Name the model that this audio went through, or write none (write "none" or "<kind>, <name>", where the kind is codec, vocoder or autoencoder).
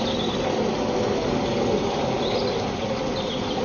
none